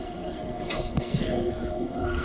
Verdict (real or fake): fake